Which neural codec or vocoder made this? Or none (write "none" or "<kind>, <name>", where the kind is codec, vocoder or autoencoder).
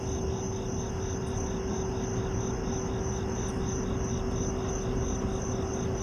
none